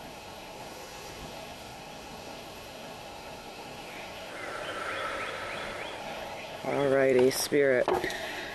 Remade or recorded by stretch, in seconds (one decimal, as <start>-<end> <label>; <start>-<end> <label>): 0.0-4.3 remade; 4.3-6.0 recorded; 6.0-6.7 remade; 6.7-7.9 recorded; 7.9-8.5 remade